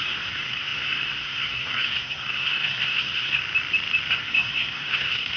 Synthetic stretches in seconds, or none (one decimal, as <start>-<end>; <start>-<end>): 0.0-3.4; 4.1-5.4